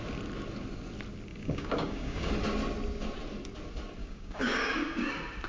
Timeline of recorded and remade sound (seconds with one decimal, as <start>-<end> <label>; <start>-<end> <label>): 0.0-1.3 recorded; 1.3-2.3 remade; 2.3-4.0 recorded; 4.0-5.1 remade; 5.1-5.5 recorded